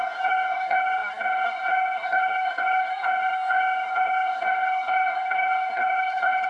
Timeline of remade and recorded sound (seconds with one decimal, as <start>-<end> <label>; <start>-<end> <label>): 0.0-6.5 remade